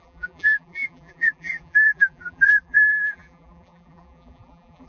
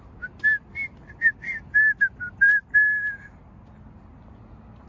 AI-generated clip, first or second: first